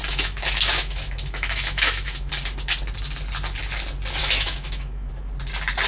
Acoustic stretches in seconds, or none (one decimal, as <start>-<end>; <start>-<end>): 2.3-4.2; 5.1-5.9